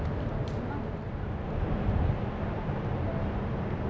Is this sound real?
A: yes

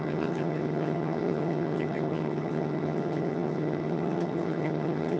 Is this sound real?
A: no